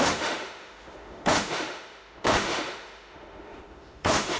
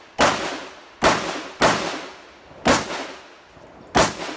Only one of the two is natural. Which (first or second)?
second